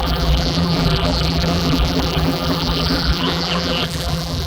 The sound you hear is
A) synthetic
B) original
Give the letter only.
A